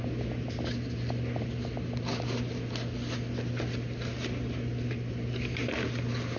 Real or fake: real